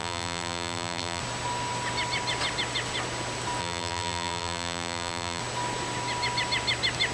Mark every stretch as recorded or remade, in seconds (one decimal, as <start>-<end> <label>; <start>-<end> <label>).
0.0-1.2 remade; 1.2-3.6 recorded; 3.6-5.4 remade; 5.4-7.1 recorded